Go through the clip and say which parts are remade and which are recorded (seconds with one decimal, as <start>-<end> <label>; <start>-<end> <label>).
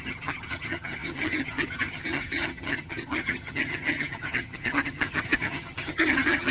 0.0-6.5 remade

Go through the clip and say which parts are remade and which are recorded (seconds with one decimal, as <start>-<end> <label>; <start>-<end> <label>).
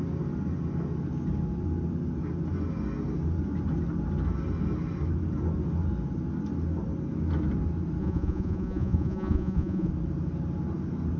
0.0-8.0 recorded; 8.0-9.9 remade; 9.9-11.2 recorded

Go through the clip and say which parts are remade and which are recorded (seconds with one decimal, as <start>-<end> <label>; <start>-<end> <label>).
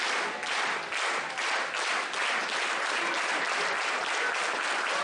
0.0-2.4 recorded; 2.4-3.0 remade; 3.0-5.0 recorded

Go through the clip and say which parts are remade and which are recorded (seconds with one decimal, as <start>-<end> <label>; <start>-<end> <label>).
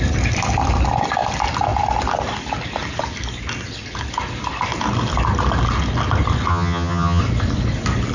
0.0-6.5 recorded; 6.5-7.2 remade; 7.2-8.1 recorded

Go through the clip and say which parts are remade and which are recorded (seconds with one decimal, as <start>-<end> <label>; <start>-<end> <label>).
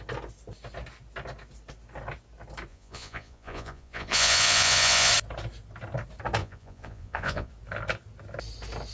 0.0-2.7 recorded; 2.7-5.1 remade; 5.1-6.4 recorded; 6.4-7.5 remade; 7.5-8.9 recorded